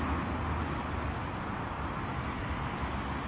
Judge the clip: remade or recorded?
recorded